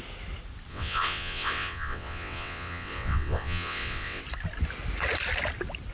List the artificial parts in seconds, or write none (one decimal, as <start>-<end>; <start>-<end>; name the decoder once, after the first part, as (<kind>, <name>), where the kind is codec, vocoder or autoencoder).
0.7-4.2 (vocoder, WaveNeXt)